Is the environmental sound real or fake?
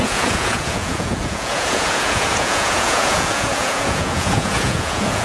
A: fake